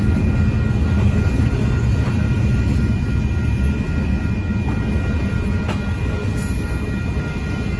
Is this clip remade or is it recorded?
recorded